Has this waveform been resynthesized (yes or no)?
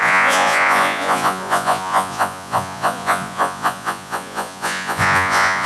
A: yes